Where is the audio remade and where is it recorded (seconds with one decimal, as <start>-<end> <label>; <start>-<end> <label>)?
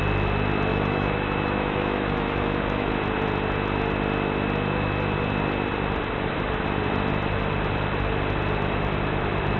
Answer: 0.0-0.7 recorded; 0.7-2.9 remade; 2.9-9.6 recorded